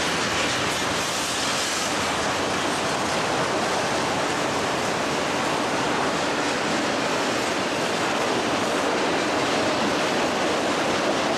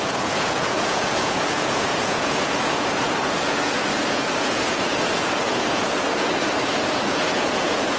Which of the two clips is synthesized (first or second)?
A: second